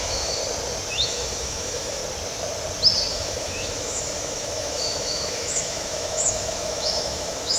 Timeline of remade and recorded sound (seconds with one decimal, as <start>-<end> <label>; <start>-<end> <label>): 0.0-0.4 remade; 0.4-0.9 recorded; 0.9-2.0 remade; 2.0-3.1 recorded; 3.1-7.6 remade